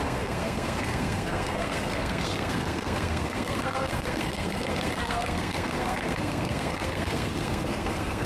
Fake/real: fake